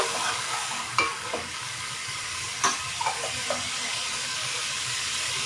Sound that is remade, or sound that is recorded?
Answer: remade